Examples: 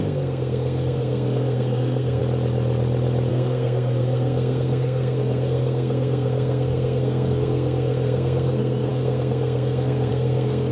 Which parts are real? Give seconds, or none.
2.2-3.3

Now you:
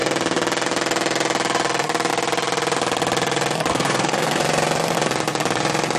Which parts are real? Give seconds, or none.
0.0-3.7; 4.4-6.0

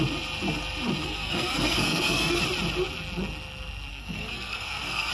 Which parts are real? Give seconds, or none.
0.0-1.0; 2.4-3.9

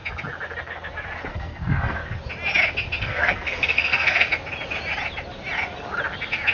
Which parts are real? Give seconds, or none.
0.0-1.3; 2.0-3.0; 4.3-6.5